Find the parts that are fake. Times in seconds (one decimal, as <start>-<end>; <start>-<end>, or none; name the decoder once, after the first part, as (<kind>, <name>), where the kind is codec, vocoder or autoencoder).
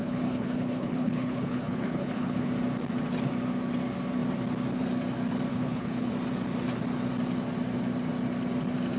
0.0-2.5 (codec, HILCodec); 5.5-6.1